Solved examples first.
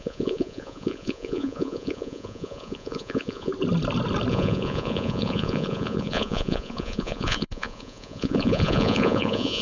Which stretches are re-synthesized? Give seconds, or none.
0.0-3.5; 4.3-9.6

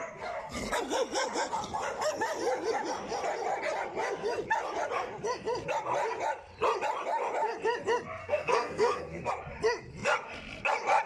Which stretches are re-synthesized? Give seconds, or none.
8.2-9.3

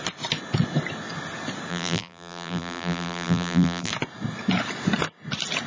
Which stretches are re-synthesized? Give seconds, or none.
1.7-3.9

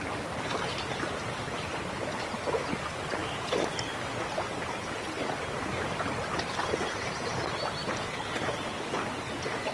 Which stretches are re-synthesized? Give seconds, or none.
none

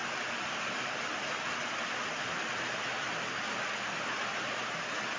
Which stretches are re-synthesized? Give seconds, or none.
0.0-0.7

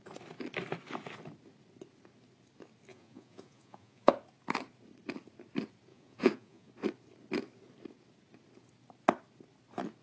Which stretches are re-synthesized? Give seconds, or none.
2.9-4.1; 5.9-6.7